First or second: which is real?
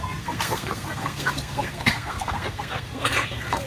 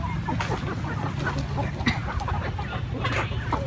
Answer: second